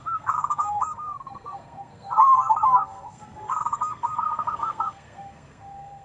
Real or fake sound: fake